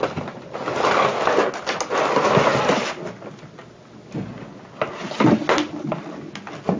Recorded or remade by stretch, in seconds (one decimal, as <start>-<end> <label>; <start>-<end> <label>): 0.0-6.8 recorded